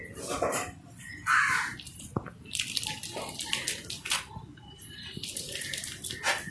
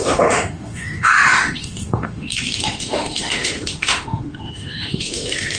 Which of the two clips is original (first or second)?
first